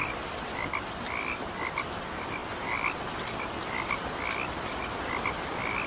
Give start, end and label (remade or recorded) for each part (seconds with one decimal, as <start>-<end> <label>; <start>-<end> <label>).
0.0-5.9 recorded